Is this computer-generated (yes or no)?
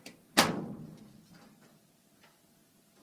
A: no